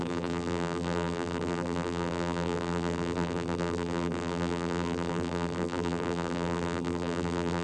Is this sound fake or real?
fake